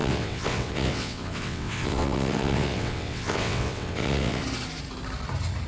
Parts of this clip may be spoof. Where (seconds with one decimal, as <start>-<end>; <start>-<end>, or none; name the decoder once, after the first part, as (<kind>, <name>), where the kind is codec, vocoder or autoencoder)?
0.0-4.4 (vocoder, WaveNeXt)